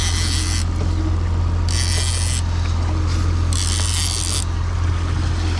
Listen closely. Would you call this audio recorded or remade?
recorded